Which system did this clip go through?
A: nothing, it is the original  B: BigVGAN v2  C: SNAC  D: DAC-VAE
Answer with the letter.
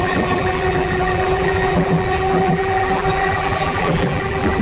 B